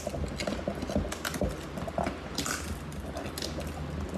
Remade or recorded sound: recorded